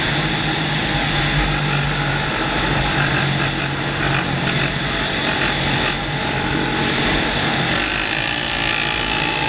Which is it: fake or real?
real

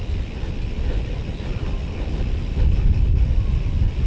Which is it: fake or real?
real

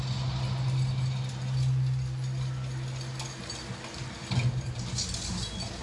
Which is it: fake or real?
real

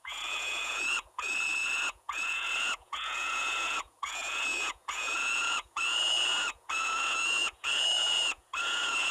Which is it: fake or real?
fake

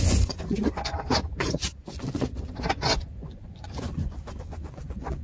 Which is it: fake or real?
fake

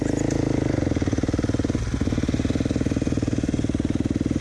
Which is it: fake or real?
real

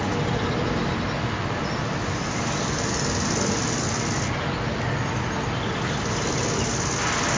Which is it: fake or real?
real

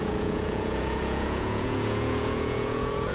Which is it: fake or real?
fake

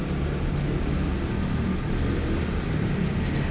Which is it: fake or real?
real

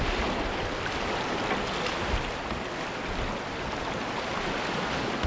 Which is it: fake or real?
real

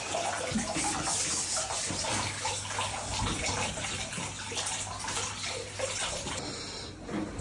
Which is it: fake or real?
real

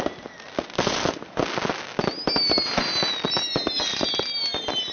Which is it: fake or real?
real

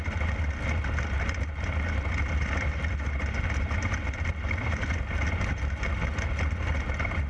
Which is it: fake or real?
real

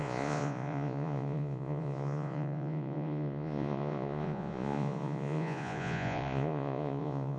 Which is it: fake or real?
fake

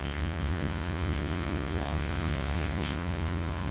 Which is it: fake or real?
fake